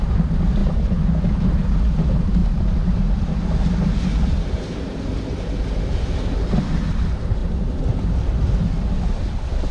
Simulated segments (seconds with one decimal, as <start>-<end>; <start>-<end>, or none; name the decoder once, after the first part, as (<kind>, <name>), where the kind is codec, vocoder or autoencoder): none